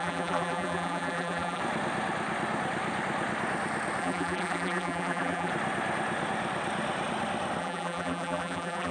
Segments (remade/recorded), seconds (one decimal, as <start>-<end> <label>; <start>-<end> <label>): 0.0-1.6 remade; 1.6-4.0 recorded; 4.0-5.5 remade; 5.5-7.6 recorded; 7.6-8.9 remade